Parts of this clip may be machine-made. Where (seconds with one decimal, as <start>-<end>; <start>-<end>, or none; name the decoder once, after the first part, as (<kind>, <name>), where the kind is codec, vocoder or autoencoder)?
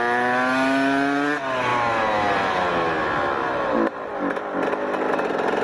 none